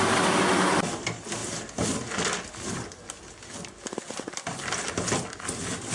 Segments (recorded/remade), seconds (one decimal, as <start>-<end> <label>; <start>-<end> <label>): 0.0-5.9 recorded